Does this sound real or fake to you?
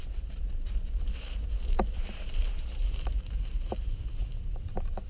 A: fake